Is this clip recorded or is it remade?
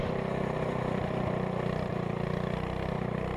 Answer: recorded